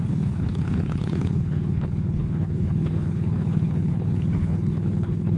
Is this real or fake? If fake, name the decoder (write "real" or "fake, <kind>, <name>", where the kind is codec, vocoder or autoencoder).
fake, codec, HILCodec